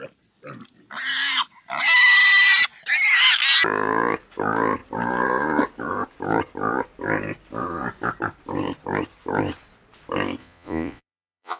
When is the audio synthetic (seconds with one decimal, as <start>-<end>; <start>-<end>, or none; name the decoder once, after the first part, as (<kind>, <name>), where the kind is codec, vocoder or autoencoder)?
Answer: 10.4-11.6 (vocoder, Vocos)